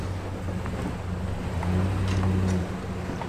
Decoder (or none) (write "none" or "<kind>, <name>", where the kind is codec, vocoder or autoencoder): none